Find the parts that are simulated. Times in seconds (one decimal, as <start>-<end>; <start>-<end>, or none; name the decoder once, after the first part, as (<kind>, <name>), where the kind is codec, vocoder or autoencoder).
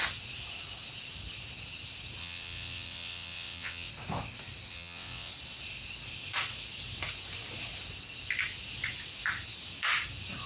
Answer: 2.2-3.9 (vocoder, WaveNeXt); 4.7-5.3